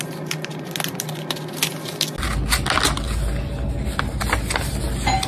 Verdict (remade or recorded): recorded